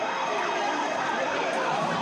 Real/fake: real